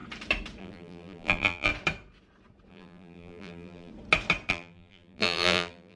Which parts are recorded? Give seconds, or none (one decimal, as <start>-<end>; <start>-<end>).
0.0-0.6; 1.7-2.7; 3.9-4.5